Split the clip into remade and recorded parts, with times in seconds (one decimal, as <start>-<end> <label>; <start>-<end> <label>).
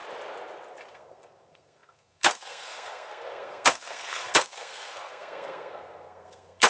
0.0-0.9 recorded; 0.9-6.7 remade